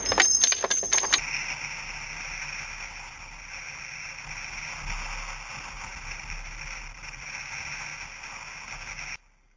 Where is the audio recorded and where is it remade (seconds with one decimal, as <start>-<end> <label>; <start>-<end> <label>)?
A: 0.0-9.6 recorded